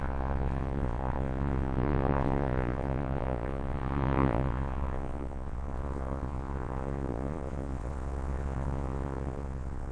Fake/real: fake